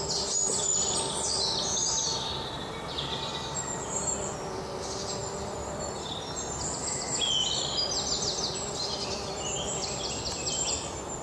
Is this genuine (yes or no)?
yes